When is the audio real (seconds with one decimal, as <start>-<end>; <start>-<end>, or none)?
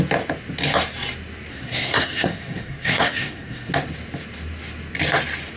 0.0-1.5; 3.7-5.6